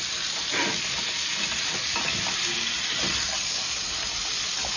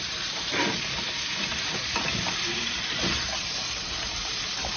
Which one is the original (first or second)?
first